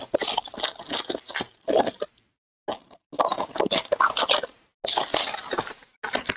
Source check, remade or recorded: recorded